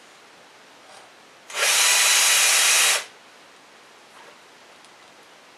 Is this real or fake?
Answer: real